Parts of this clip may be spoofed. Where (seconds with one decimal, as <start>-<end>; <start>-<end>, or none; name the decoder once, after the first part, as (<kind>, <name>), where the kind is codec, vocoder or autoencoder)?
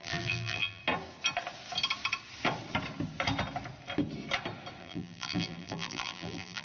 0.0-0.8 (vocoder, BigVGAN v2); 4.8-6.6